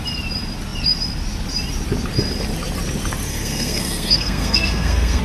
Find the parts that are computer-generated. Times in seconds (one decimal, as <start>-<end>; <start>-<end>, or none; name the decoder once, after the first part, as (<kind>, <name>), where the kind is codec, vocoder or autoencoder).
3.3-5.2 (codec, SNAC)